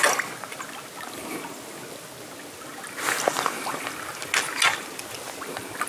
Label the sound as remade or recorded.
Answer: recorded